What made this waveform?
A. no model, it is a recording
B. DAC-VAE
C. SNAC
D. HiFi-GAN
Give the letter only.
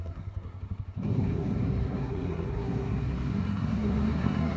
C